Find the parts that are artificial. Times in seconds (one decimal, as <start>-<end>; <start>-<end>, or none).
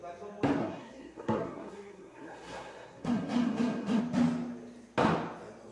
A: 0.6-4.0